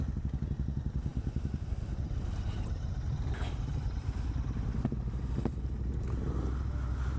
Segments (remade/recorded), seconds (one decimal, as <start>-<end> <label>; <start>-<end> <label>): 0.0-7.2 recorded